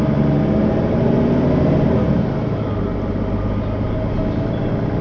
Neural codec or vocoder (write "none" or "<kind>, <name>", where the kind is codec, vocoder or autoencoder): none